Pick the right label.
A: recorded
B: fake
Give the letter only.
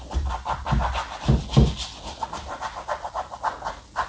A